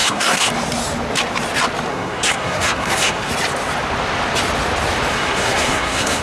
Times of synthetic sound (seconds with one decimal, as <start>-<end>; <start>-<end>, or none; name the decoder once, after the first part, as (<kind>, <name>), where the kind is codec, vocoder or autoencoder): 0.0-0.5 (codec, SNAC); 1.9-3.3; 5.1-6.2